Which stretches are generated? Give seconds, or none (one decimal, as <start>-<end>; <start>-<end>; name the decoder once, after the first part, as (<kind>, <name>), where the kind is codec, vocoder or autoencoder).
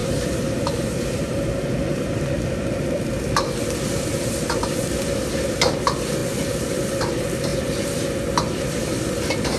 0.0-6.2 (vocoder, BigVGAN v2); 6.7-7.5; 8.7-9.6